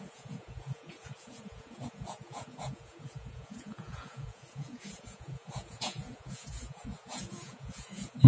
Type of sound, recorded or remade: remade